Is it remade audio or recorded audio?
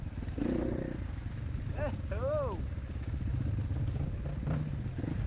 recorded